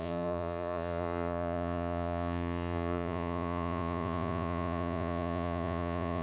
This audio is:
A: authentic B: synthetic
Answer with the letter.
B